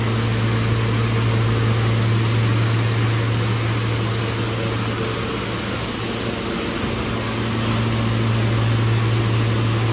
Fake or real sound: real